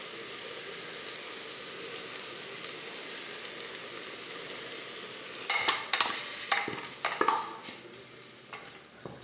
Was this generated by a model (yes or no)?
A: no